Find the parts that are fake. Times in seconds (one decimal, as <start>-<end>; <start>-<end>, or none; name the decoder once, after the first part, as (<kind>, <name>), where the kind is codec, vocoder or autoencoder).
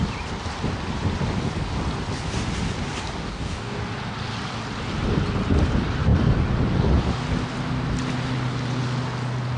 3.2-3.8 (codec, DAC)